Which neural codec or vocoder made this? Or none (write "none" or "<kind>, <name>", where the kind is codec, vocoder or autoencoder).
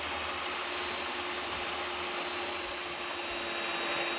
none